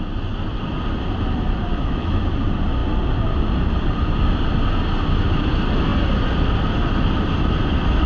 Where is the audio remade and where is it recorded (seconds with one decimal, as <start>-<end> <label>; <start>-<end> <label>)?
0.0-1.7 recorded; 1.7-2.3 remade; 2.3-8.1 recorded